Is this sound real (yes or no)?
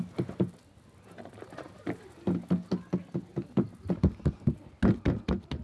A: yes